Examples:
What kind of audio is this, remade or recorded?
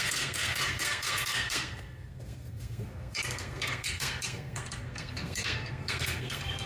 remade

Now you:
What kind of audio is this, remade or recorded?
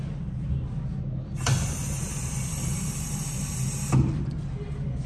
recorded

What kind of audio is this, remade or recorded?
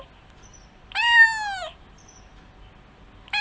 recorded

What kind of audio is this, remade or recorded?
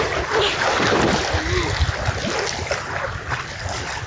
recorded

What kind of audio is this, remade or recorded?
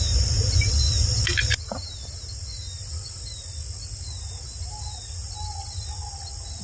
recorded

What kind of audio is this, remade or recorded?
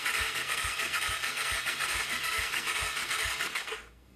remade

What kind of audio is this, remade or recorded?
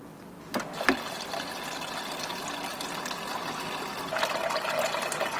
recorded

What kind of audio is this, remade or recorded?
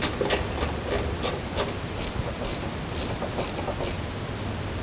recorded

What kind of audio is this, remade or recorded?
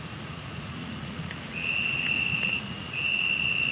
remade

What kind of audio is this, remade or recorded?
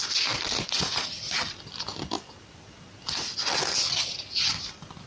recorded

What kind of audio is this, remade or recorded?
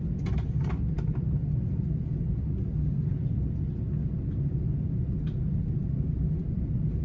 recorded